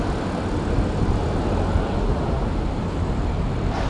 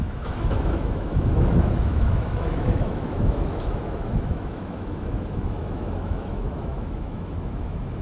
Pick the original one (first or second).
first